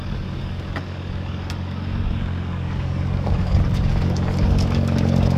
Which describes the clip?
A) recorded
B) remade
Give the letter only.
B